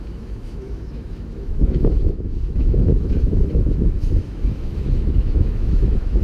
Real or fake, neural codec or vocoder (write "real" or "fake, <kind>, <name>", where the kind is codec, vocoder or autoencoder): fake, autoencoder, DAC-VAE